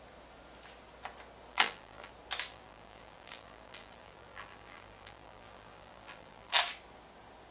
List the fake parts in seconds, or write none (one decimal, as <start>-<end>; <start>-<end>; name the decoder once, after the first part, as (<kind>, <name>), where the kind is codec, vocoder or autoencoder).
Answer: 1.5-2.1 (vocoder, BigVGAN v2); 2.5-6.5